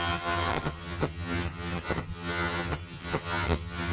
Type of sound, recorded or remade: remade